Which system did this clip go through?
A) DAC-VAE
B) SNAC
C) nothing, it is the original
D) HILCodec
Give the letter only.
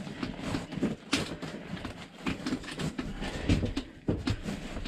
C